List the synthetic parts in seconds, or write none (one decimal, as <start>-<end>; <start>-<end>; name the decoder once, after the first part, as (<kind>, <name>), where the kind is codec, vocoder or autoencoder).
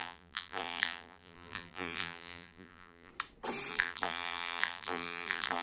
0.0-3.1 (vocoder, BigVGAN v2); 3.7-5.6